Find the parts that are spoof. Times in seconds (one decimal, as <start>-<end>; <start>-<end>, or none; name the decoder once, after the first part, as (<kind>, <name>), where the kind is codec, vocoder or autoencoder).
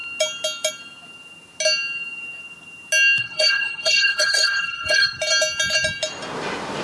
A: 3.2-5.2 (codec, HILCodec)